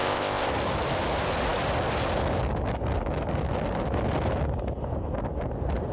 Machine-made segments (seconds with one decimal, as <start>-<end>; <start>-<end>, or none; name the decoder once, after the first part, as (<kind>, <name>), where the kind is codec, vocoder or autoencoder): 0.0-0.5 (codec, ZipCodec)